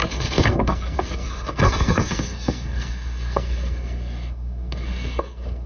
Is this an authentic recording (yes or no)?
no